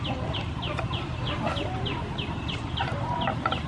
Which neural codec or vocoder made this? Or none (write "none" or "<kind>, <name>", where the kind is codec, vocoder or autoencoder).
none